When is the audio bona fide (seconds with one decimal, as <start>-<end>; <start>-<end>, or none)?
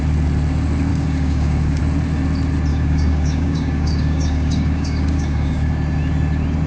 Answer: 0.0-0.9; 1.8-2.7; 5.7-6.7